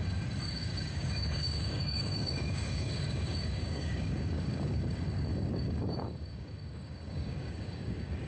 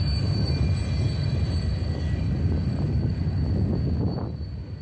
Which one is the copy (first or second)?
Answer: first